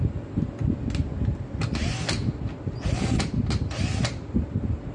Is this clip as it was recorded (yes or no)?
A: yes